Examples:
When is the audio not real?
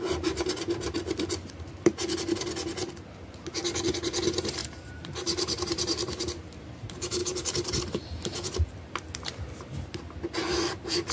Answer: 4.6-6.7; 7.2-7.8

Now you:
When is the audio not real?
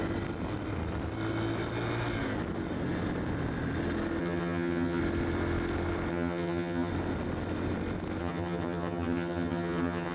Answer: 4.2-5.0; 6.1-6.9; 8.2-10.1